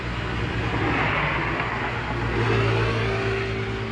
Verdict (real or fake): real